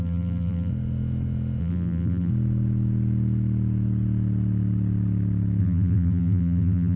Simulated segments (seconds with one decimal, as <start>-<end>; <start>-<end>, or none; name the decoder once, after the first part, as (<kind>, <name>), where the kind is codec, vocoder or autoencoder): 0.0-0.7 (vocoder, BigVGAN v2); 1.6-2.3; 5.6-7.0